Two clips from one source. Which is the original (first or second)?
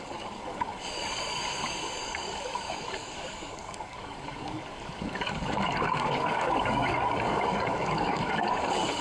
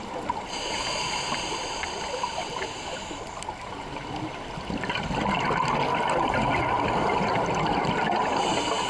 second